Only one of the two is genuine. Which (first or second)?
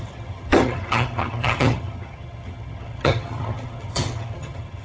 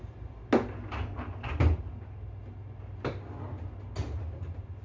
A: second